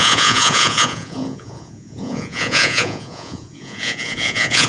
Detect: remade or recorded remade